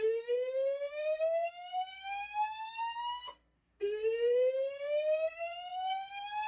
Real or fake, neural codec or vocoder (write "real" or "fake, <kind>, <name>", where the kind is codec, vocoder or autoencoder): fake, codec, SNAC